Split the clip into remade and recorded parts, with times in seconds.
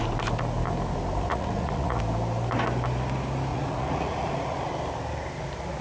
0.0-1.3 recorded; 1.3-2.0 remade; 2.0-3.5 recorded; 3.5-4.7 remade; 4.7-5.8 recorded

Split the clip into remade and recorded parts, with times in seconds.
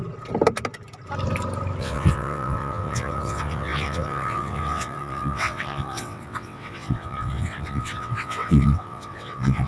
0.0-1.8 recorded; 1.8-9.7 remade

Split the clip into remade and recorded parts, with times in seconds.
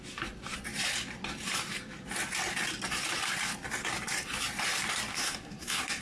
0.0-5.1 recorded; 5.1-6.0 remade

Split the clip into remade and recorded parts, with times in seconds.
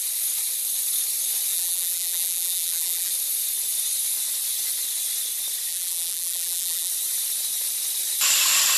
0.0-1.5 recorded; 1.5-3.1 remade; 3.1-5.7 recorded; 5.7-6.9 remade; 6.9-8.8 recorded